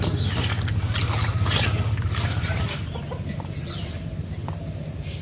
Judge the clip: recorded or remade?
recorded